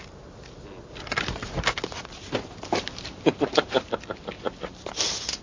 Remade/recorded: recorded